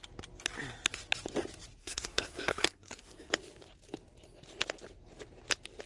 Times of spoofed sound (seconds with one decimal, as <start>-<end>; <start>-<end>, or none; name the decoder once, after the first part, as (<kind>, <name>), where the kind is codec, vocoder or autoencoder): 1.8-3.3 (codec, SNAC)